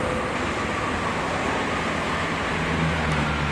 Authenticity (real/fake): real